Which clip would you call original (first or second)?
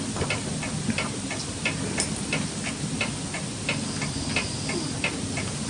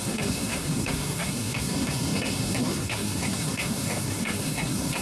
first